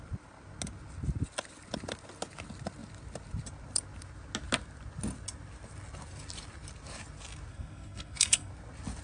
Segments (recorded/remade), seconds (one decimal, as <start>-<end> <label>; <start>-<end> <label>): 0.0-7.5 recorded; 7.5-8.5 remade; 8.5-9.0 recorded